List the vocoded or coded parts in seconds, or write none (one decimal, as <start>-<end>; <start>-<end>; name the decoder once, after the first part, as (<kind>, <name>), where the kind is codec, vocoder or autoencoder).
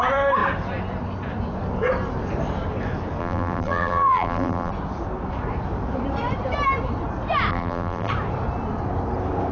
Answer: 3.2-4.7 (vocoder, BigVGAN v2); 7.5-8.1